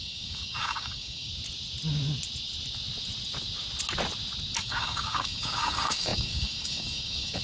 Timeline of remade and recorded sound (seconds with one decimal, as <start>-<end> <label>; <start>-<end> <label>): 0.0-1.3 remade; 1.3-4.6 recorded; 4.6-7.4 remade